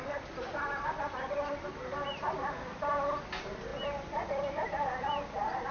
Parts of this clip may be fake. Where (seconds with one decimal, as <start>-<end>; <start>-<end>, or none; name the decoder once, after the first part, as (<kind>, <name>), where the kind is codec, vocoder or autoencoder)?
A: none